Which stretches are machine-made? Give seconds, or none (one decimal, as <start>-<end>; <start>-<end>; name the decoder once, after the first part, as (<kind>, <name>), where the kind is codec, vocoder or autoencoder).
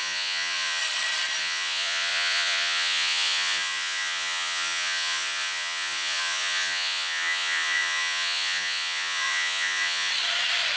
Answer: 0.0-0.8 (vocoder, Vocos); 1.4-10.1